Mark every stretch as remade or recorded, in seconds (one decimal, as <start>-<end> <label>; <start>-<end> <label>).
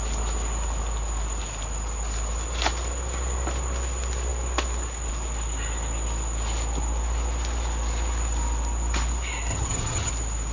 0.0-9.5 recorded; 9.5-10.1 remade; 10.1-10.5 recorded